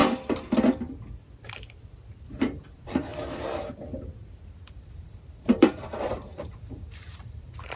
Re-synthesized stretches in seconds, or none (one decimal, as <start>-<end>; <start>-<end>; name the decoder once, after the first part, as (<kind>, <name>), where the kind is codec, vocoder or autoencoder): 2.4-3.1 (vocoder, BigVGAN v2); 4.5-7.8